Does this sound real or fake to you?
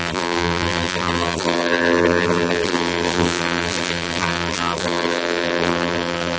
fake